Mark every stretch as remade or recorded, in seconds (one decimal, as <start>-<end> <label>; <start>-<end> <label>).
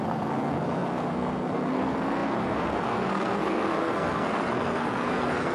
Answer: 0.0-5.5 remade